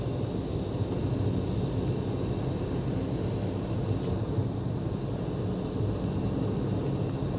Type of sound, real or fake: real